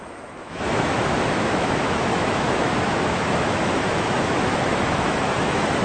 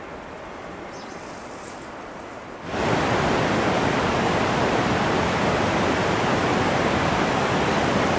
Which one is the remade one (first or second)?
first